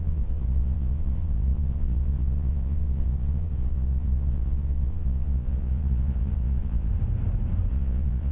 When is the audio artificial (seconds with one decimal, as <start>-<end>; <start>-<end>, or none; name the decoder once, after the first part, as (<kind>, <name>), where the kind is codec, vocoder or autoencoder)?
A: 0.0-6.9 (vocoder, Vocos); 7.7-8.3